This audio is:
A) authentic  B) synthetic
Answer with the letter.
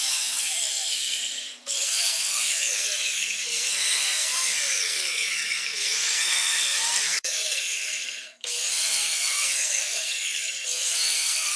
B